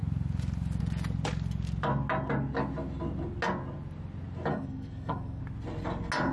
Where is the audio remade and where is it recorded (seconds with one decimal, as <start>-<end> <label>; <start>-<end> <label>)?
0.0-4.5 recorded; 4.5-5.4 remade; 5.4-6.3 recorded